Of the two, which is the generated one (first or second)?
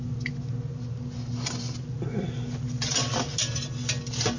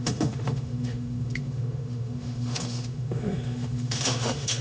second